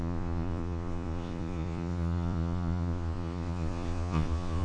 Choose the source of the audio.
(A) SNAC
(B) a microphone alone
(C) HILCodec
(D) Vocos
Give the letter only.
D